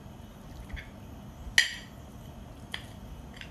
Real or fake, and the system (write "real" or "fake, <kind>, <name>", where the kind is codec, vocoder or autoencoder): real